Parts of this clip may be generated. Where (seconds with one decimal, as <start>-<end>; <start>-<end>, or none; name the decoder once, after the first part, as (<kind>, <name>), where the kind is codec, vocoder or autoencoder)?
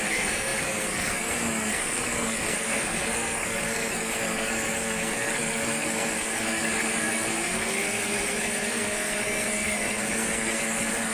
0.0-11.1 (codec, SNAC)